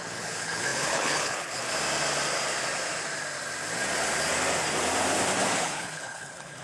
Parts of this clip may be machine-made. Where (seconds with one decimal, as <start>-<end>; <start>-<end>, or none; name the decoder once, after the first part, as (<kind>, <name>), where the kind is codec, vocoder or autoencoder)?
0.0-1.6 (codec, HILCodec); 5.6-6.6